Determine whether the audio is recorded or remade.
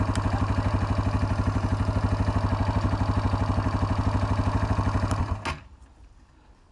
recorded